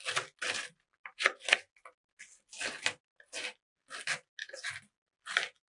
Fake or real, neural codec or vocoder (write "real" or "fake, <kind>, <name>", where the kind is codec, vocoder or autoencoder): real